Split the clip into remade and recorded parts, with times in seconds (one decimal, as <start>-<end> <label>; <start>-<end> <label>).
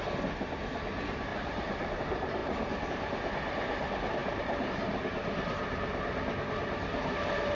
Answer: 0.0-1.3 recorded; 1.3-2.0 remade; 2.0-4.2 recorded; 4.2-6.3 remade; 6.3-7.5 recorded